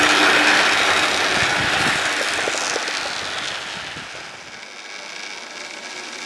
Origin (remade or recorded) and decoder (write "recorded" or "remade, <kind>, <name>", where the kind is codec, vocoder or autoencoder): recorded